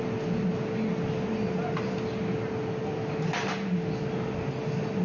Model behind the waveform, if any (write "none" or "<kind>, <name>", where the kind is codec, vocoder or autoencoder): none